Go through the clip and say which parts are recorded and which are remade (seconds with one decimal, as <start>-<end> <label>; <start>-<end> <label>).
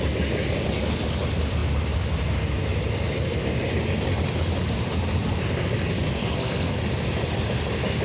0.0-6.2 recorded; 6.2-6.8 remade; 6.8-8.0 recorded